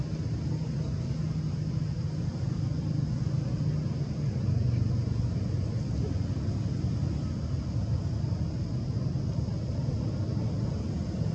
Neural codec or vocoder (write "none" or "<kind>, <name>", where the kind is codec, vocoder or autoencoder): none